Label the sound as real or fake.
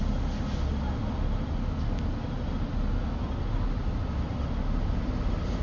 real